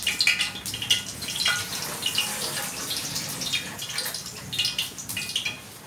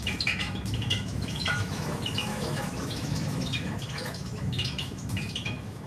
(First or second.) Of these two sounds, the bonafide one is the first